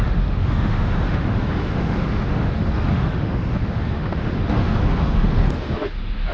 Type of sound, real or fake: fake